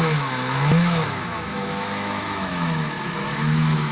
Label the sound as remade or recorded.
remade